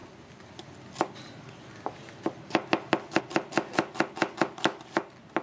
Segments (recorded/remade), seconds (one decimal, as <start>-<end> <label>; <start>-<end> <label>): 0.0-5.4 recorded